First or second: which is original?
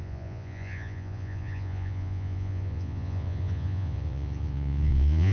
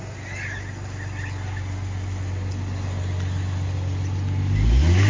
second